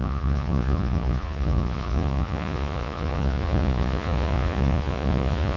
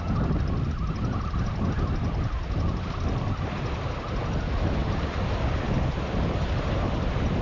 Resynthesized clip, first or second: first